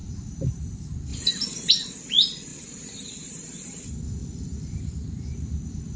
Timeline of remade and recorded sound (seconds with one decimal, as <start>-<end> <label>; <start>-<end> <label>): 0.0-2.5 recorded; 2.5-3.8 remade; 3.8-4.2 recorded; 4.2-4.9 remade; 4.9-6.0 recorded